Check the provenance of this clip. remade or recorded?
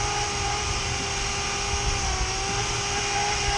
recorded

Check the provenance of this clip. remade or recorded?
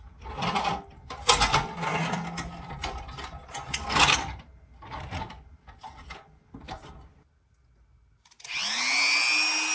recorded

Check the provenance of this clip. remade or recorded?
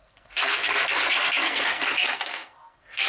remade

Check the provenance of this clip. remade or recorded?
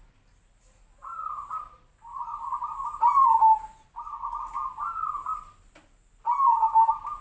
recorded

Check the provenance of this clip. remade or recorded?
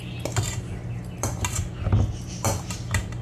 recorded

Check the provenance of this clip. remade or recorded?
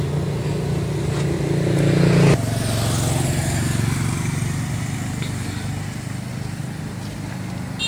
recorded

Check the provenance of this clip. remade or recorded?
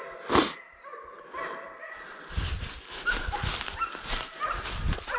recorded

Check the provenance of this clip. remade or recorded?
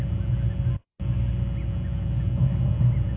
recorded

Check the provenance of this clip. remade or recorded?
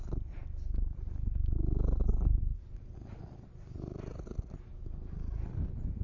remade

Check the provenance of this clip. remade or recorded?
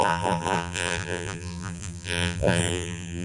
remade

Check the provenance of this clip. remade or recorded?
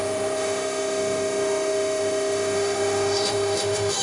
remade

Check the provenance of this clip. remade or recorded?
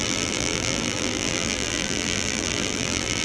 remade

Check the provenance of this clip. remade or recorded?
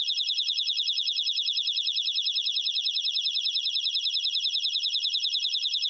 remade